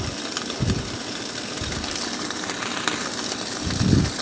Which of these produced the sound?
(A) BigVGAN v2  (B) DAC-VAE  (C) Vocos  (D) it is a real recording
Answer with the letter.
D